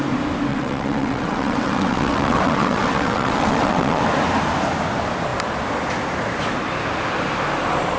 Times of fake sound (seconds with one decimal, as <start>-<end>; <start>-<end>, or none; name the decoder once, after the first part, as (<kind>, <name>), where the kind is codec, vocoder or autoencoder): 0.5-4.0 (vocoder, WaveNeXt)